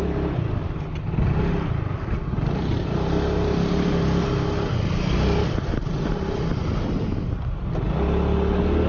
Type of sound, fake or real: real